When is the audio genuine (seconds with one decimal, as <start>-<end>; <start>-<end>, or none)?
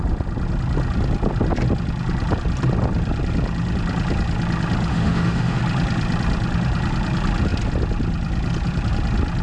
0.0-4.9; 5.6-9.4